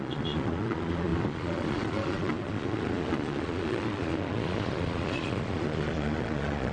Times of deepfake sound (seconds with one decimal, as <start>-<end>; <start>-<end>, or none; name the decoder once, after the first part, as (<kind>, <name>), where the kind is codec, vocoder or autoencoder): 0.0-6.7 (vocoder, Vocos)